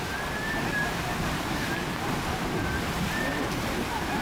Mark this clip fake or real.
fake